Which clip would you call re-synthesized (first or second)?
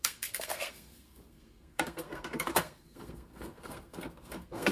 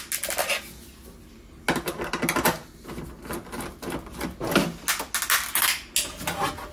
first